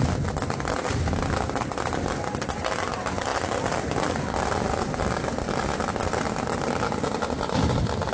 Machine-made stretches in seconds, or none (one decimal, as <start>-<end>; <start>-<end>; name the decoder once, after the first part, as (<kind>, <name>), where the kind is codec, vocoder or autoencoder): none